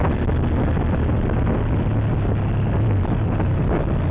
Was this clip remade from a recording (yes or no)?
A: no